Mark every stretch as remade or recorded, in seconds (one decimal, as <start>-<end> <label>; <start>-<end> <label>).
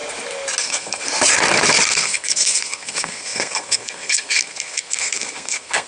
0.0-0.6 recorded; 0.6-1.0 remade; 1.0-1.9 recorded; 1.9-5.9 remade